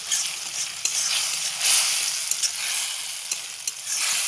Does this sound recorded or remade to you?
recorded